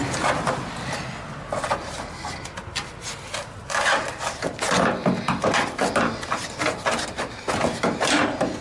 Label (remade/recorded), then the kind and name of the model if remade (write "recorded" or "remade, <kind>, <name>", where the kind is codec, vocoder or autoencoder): recorded